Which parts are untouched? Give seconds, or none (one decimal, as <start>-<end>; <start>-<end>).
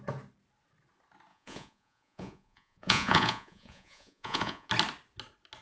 0.0-1.3; 4.7-5.6